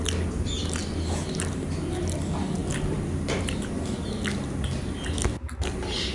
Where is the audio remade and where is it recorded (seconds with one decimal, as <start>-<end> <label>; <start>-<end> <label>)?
0.0-6.1 recorded